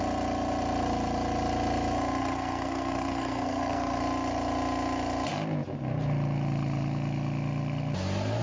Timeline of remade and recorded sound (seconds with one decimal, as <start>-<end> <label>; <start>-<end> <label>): 0.0-2.2 recorded; 2.2-4.0 remade; 4.0-8.4 recorded